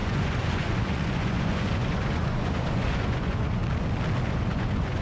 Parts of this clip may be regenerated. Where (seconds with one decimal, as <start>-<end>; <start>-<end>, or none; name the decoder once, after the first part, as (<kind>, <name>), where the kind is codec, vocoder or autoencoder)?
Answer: 0.0-3.6 (vocoder, Vocos); 4.2-5.0